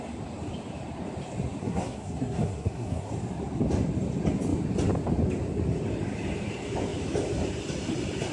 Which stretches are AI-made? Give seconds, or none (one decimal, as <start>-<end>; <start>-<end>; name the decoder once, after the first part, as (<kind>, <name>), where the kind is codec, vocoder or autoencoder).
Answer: 1.6-3.1 (codec, SNAC)